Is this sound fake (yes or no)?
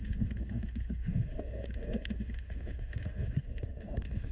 yes